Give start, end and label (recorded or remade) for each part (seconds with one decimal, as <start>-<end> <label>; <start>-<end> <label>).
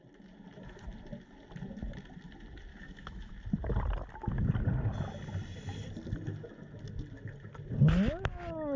0.0-2.7 recorded; 2.7-3.3 remade; 3.3-8.8 recorded